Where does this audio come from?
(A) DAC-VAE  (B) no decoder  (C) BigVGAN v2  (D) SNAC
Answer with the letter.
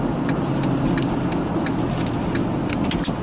B